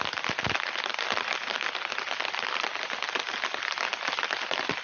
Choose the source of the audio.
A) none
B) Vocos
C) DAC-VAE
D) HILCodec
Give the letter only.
A